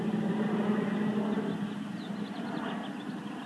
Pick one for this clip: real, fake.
real